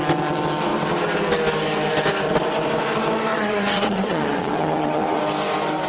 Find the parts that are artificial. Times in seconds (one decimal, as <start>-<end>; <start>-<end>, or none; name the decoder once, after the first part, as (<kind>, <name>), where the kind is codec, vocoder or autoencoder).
3.3-5.2 (vocoder, WaveNeXt)